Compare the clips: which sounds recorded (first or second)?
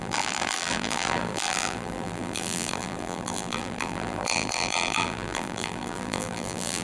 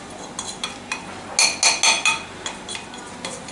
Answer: second